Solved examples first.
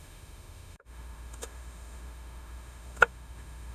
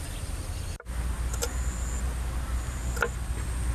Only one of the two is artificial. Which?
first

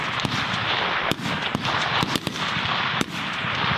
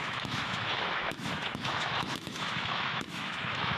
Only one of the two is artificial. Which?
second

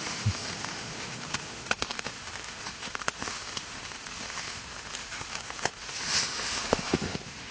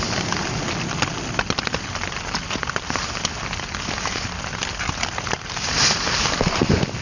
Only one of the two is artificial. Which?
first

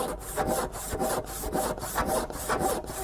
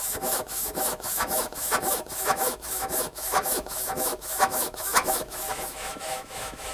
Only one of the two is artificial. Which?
second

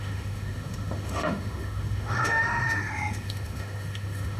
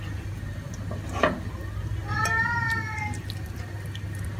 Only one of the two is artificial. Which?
first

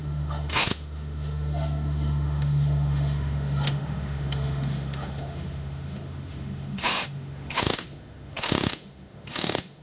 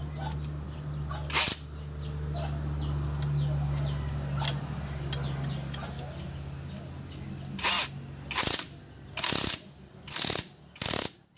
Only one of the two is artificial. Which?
first